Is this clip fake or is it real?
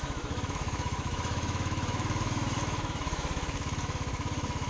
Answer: fake